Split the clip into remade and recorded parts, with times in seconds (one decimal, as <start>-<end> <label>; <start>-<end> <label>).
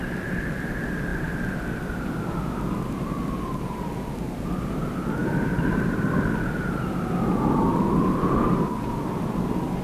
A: 0.0-9.8 recorded